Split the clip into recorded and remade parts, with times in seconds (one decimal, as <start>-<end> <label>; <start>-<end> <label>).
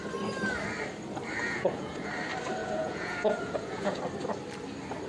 0.0-1.4 recorded; 1.4-2.1 remade; 2.1-2.6 recorded; 2.6-4.0 remade; 4.0-5.1 recorded